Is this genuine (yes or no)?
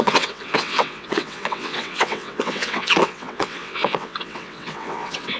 no